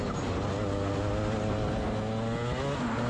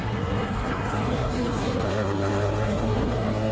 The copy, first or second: second